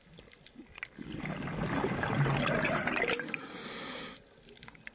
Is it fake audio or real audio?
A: real